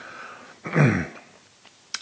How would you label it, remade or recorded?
recorded